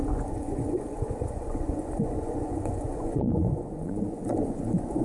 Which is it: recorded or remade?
remade